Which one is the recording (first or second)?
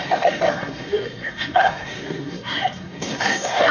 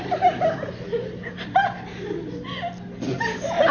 second